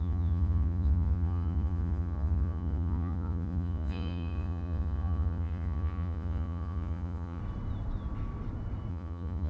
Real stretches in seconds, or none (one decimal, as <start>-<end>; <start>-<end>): 7.4-8.9